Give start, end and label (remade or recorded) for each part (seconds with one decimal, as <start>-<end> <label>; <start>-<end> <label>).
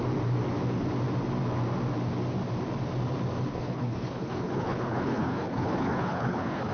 0.0-3.5 recorded; 3.5-6.7 remade